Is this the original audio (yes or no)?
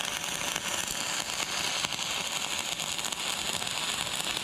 yes